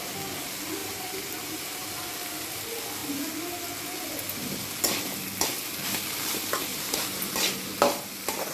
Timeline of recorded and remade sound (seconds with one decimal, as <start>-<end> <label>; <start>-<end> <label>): 0.0-0.8 recorded; 0.8-1.9 remade; 1.9-6.7 recorded; 6.7-7.3 remade; 7.3-8.5 recorded